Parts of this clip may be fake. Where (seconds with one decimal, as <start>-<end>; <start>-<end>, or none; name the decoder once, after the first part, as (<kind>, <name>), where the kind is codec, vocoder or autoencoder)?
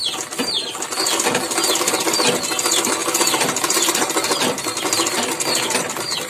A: 0.0-1.9 (vocoder, BigVGAN v2); 3.0-6.3